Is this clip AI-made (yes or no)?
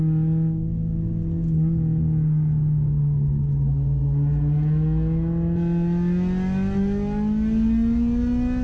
no